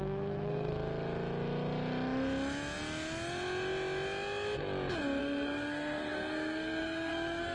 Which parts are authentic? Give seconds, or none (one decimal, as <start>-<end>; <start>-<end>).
0.7-5.2